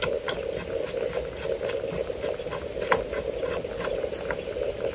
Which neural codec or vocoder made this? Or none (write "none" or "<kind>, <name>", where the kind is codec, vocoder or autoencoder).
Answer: none